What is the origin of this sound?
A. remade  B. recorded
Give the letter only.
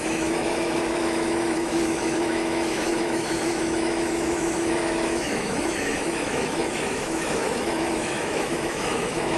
A